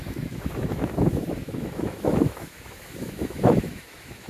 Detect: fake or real fake